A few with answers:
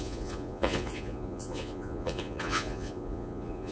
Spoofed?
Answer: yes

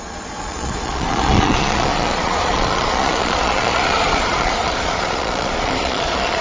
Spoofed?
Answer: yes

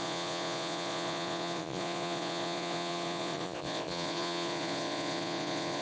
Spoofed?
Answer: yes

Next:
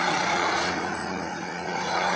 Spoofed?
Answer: yes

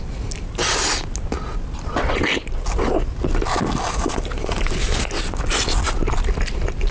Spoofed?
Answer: no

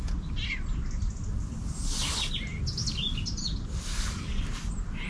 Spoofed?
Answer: no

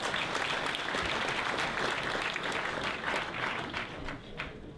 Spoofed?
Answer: no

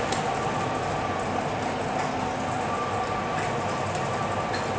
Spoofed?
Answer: no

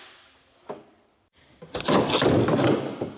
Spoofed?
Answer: no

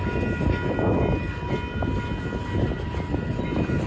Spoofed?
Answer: no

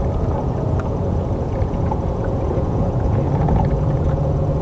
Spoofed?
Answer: yes